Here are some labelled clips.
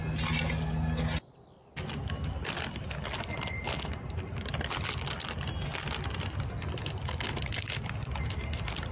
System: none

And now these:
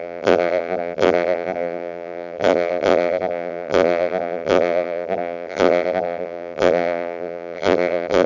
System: vocoder, BigVGAN v2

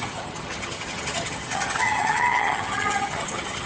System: vocoder, HiFi-GAN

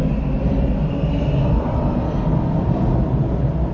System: none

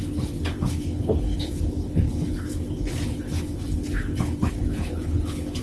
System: codec, HILCodec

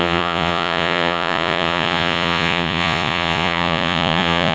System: vocoder, Vocos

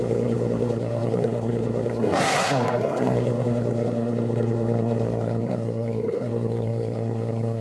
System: codec, SNAC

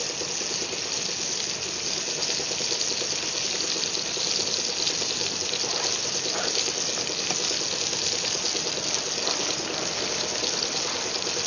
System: none